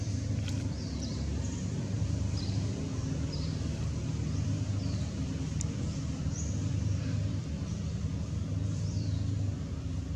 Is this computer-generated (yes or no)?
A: yes